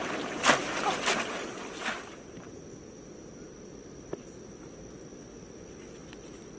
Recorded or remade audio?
recorded